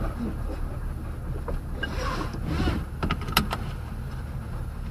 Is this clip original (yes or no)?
yes